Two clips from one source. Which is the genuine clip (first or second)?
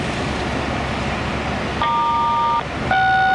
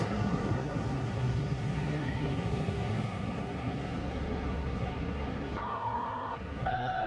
first